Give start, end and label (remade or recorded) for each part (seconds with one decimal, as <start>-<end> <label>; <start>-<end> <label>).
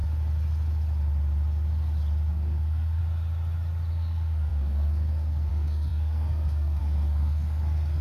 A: 0.0-2.3 recorded; 2.3-3.0 remade; 3.0-3.9 recorded; 3.9-8.0 remade